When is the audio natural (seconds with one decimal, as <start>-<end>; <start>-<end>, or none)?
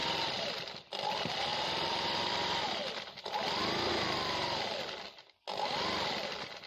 0.5-1.5; 3.9-6.7